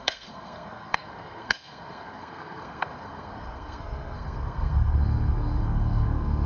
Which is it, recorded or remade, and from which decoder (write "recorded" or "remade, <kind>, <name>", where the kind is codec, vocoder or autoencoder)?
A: remade, codec, SNAC